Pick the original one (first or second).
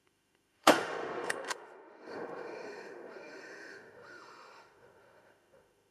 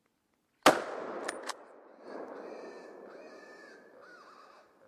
second